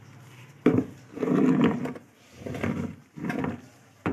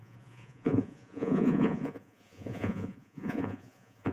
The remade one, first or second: second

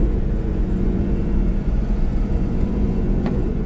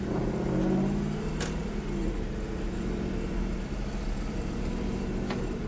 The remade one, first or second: first